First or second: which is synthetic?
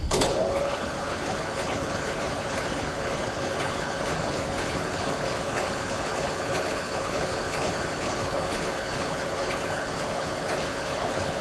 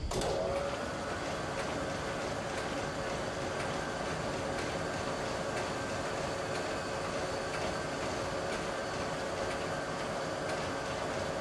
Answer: first